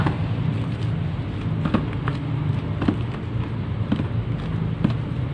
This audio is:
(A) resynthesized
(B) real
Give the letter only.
B